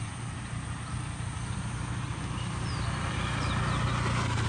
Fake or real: real